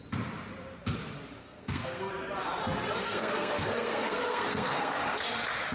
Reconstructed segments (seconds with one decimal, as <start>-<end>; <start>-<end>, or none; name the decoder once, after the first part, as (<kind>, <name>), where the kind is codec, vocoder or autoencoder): 1.4-2.1 (codec, SNAC); 3.0-4.9